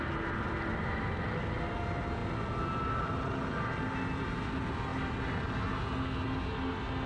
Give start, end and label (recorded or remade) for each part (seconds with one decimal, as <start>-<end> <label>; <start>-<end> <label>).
0.0-7.1 recorded